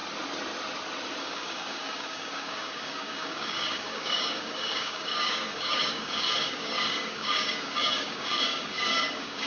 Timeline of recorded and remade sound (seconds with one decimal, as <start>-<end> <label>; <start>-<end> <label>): 0.0-1.2 recorded; 1.2-9.5 remade